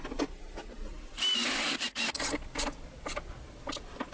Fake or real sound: real